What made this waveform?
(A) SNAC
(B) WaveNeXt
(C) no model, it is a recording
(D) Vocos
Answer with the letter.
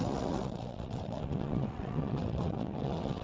B